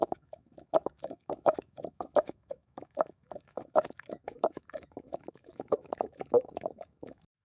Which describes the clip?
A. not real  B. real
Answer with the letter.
A